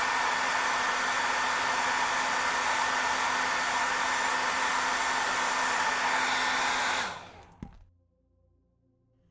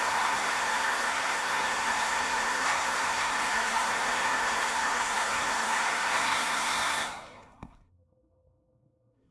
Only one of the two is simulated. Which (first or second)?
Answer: second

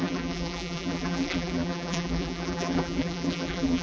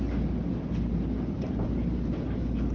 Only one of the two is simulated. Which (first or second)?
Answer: first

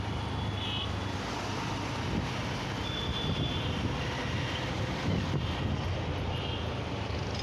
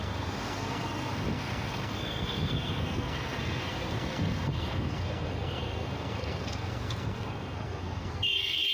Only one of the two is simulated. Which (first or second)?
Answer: second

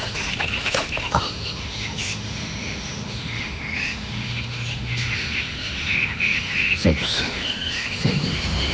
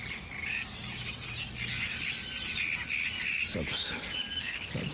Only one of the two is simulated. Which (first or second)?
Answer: first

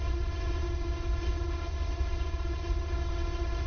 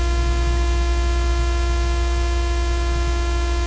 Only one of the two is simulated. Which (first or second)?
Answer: first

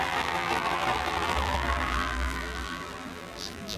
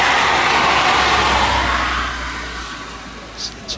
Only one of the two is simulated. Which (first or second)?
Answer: first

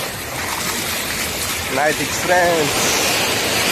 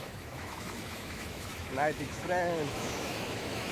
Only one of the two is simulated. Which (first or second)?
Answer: second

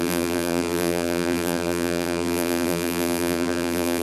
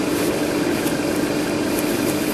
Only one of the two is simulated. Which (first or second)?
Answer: first